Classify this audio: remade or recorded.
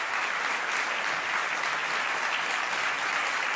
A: recorded